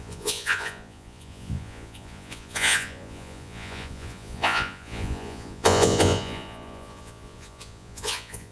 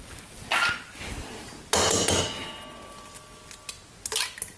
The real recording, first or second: second